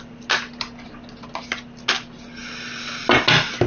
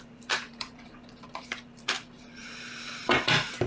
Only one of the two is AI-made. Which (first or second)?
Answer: second